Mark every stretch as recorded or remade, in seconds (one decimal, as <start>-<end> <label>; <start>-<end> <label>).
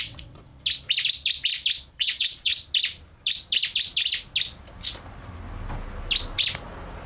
0.0-0.5 remade; 0.5-1.9 recorded; 1.9-2.5 remade; 2.5-7.1 recorded